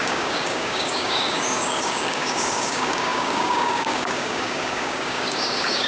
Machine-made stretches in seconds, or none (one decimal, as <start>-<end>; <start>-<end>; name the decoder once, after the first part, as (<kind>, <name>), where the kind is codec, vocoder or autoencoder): 0.0-5.9 (codec, DAC)